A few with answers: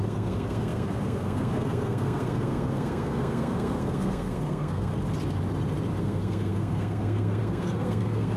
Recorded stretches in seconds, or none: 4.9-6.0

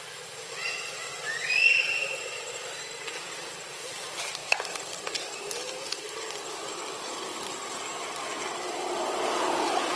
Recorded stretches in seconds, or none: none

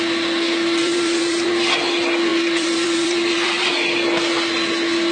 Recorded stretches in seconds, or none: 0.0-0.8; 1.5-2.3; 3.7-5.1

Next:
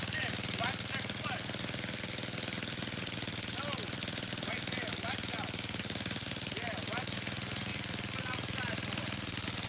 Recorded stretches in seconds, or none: 0.0-9.7